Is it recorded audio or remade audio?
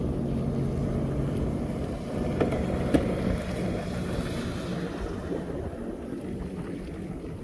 recorded